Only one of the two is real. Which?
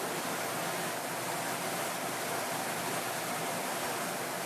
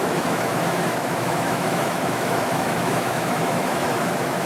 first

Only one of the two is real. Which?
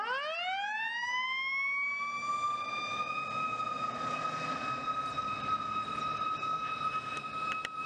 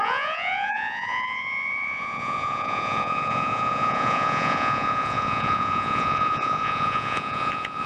first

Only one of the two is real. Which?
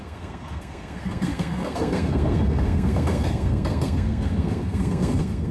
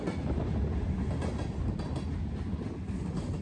second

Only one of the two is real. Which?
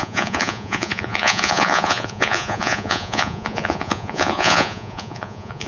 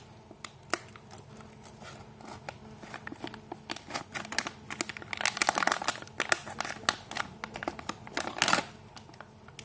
second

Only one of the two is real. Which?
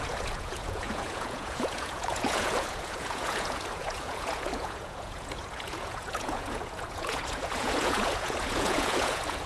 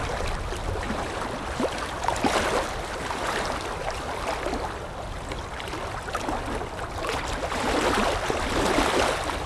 second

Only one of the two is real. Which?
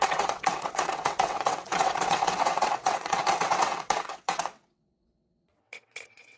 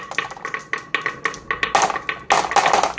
second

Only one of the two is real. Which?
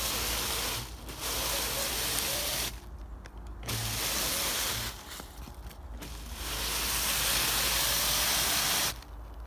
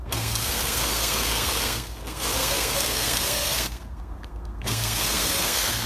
first